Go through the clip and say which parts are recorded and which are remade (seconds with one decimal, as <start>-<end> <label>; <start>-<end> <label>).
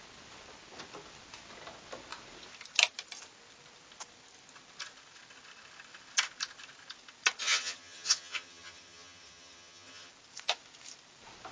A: 0.0-7.4 recorded; 7.4-10.1 remade; 10.1-11.5 recorded